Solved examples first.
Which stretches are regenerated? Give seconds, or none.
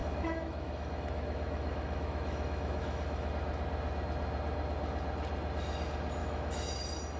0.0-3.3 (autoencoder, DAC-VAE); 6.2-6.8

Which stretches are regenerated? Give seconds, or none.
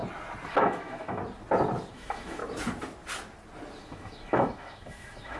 0.5-1.2 (autoencoder, DAC-VAE); 1.9-2.4; 3.8-5.4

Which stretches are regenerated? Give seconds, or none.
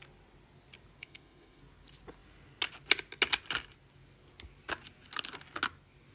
1.0-1.6 (autoencoder, DAC-VAE)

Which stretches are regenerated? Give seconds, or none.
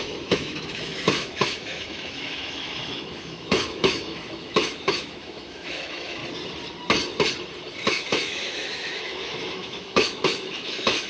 0.0-6.2 (autoencoder, DAC-VAE); 7.9-11.1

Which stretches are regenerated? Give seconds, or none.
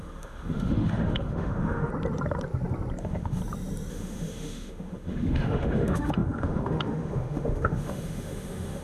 0.0-1.9 (autoencoder, DAC-VAE); 3.0-3.4; 3.9-8.8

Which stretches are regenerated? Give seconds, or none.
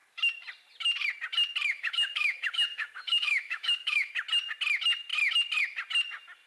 1.7-4.1 (autoencoder, DAC-VAE)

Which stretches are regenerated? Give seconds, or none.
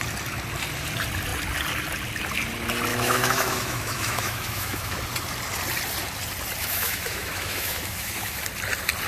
2.9-5.0 (autoencoder, DAC-VAE); 6.6-8.4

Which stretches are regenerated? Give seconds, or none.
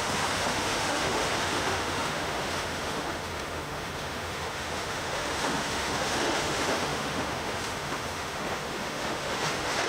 0.0-9.9 (autoencoder, DAC-VAE)